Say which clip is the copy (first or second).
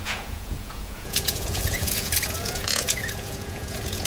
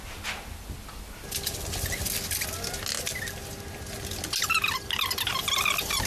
first